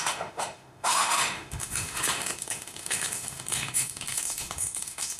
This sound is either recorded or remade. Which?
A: remade